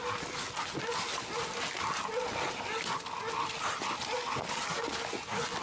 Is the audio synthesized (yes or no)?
no